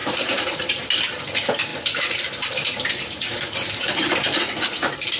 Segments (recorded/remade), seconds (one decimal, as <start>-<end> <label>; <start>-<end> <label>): 0.0-0.8 remade; 0.8-1.7 recorded; 1.7-4.5 remade; 4.5-5.2 recorded